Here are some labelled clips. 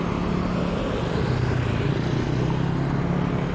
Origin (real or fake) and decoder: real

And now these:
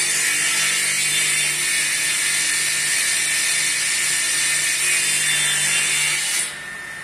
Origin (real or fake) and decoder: real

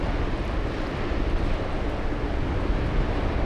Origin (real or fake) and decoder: real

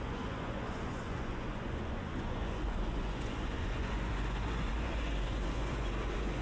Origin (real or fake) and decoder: fake, vocoder, Vocos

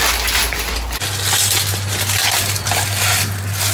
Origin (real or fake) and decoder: real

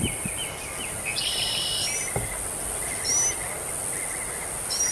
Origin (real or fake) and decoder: real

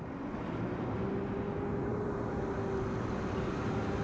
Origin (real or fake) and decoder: real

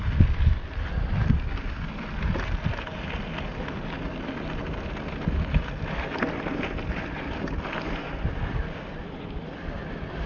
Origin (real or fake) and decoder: real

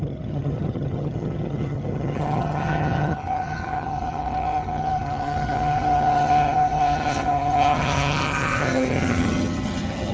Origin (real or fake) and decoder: fake, vocoder, HiFi-GAN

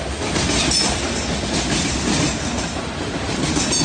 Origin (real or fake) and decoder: real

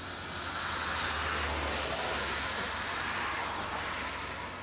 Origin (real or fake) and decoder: real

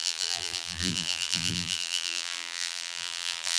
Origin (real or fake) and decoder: fake, vocoder, BigVGAN v2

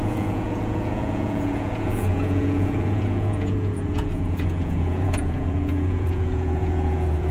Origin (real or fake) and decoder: fake, vocoder, Vocos